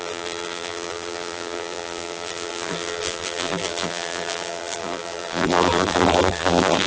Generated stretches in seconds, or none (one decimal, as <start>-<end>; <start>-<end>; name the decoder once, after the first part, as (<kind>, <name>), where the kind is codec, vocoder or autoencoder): 0.0-6.9 (vocoder, BigVGAN v2)